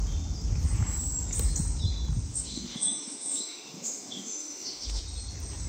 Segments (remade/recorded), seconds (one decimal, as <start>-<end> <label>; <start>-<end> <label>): 0.0-2.3 recorded; 2.3-5.0 remade; 5.0-5.7 recorded